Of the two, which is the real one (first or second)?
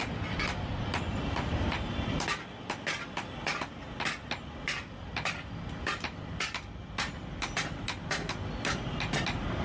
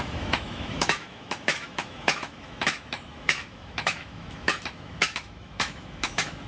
first